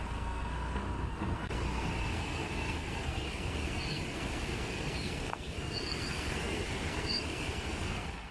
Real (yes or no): no